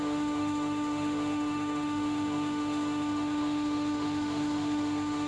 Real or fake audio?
fake